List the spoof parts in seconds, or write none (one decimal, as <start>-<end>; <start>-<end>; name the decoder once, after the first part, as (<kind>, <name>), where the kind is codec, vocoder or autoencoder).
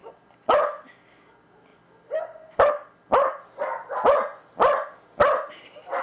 none